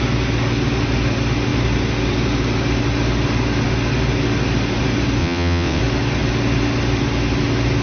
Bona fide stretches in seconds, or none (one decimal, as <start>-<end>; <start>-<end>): 0.0-5.2; 5.8-7.8